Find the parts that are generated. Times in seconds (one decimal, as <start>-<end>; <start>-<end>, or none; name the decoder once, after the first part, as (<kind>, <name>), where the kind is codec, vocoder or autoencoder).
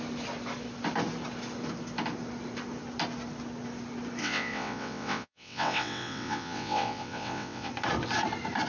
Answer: 4.2-7.7 (vocoder, WaveNeXt)